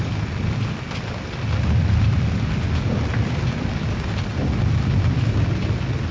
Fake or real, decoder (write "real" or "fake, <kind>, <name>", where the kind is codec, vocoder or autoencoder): real